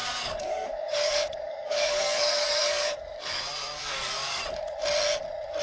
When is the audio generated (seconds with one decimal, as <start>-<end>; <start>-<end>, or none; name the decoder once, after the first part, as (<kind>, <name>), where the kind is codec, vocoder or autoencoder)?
0.0-3.4 (codec, DAC); 3.8-4.4